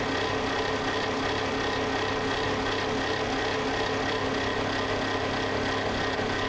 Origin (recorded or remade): recorded